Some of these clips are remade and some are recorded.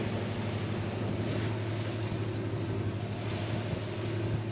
recorded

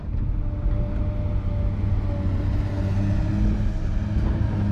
recorded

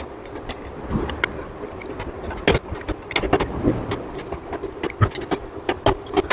recorded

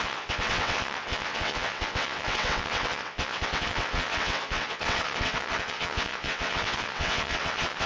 remade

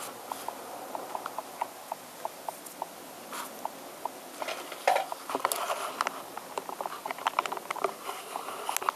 recorded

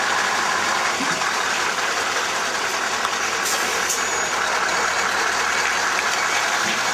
remade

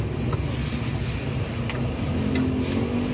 recorded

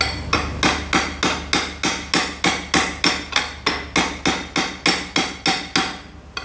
recorded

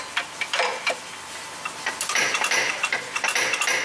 recorded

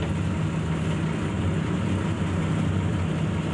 recorded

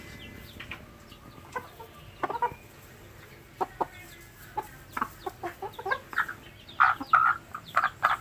recorded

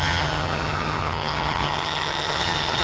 remade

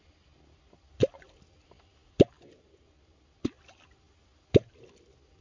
recorded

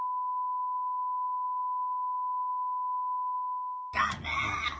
recorded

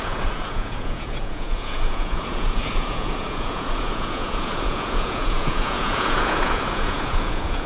remade